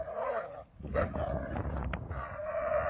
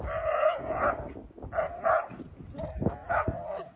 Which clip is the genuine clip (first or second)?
second